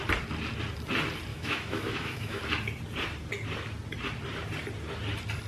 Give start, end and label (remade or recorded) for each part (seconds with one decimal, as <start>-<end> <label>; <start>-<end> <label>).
0.0-1.3 recorded; 1.3-2.4 remade; 2.4-5.5 recorded